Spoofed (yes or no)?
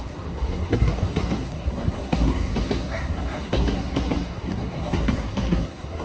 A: yes